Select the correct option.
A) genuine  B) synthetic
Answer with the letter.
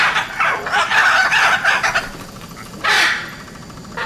A